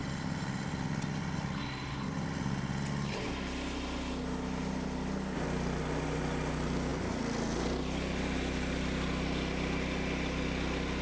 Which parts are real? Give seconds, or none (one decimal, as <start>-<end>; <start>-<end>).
0.0-11.0